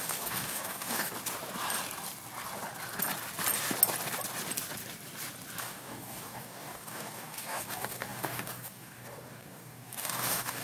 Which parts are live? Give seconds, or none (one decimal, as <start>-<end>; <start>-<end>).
1.1-5.6